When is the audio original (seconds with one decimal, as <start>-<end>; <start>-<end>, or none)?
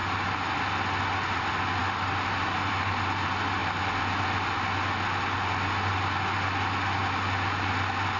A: 0.0-8.2